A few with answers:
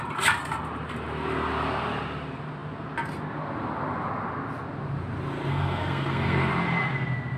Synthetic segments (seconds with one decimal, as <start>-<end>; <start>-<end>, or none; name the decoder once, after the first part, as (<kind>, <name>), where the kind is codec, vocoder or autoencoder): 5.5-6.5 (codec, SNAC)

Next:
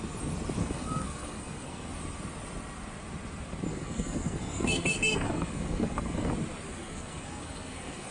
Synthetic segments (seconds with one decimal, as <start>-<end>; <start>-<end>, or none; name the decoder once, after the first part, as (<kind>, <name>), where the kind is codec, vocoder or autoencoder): 0.6-1.9 (codec, SNAC); 3.7-6.3; 6.8-8.1

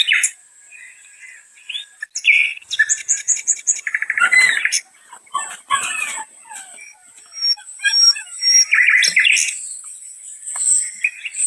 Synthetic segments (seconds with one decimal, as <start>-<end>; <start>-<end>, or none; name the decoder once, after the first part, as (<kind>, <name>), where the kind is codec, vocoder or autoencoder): none